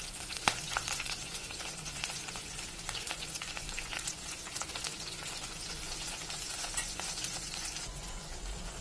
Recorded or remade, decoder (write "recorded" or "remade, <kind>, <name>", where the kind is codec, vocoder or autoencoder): remade, vocoder, Vocos